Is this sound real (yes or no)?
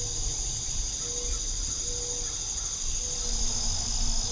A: yes